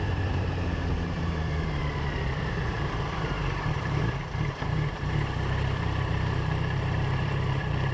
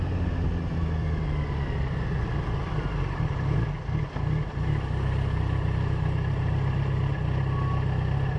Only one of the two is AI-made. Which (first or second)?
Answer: first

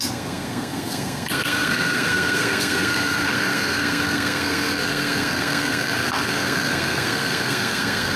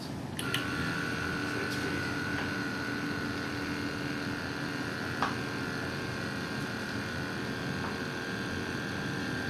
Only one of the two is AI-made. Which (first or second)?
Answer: first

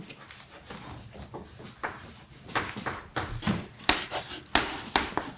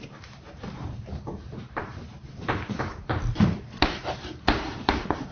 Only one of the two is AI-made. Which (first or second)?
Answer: second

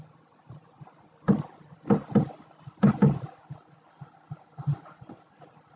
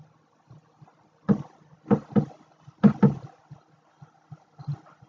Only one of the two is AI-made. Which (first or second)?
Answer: first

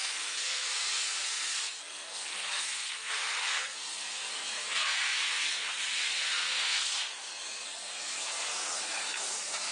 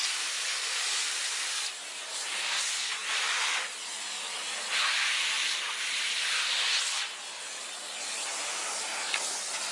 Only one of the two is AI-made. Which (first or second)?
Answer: first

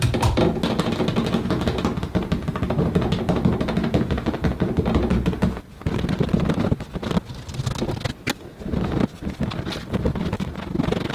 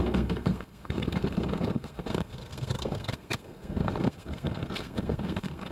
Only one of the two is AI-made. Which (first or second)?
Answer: second